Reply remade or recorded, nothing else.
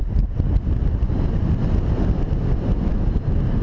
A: recorded